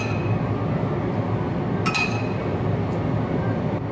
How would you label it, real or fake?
real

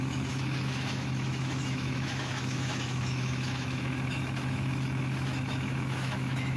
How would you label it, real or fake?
fake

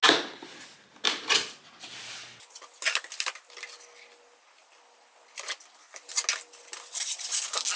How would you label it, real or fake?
real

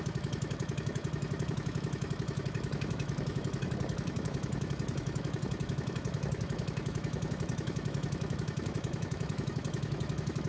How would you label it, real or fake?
fake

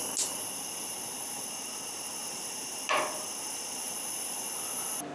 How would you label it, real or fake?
real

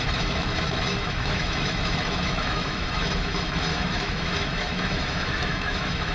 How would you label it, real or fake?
fake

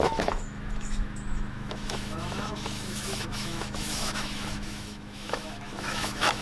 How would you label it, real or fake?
fake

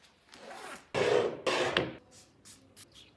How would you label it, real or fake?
real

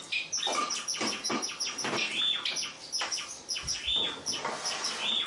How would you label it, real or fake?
real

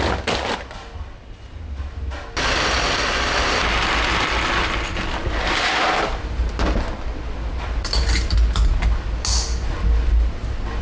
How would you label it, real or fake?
real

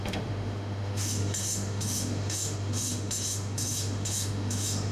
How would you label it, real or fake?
fake